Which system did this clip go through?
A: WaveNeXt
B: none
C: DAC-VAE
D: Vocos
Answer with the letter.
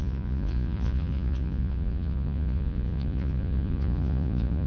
D